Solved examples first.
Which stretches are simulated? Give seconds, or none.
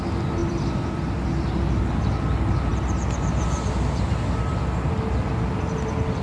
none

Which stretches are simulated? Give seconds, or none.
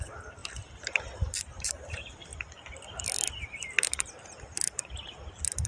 0.0-2.3 (vocoder, BigVGAN v2)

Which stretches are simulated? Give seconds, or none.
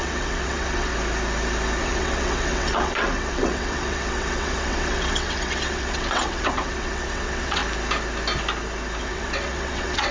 0.0-0.9 (vocoder, WaveNeXt); 1.8-7.6; 9.0-10.1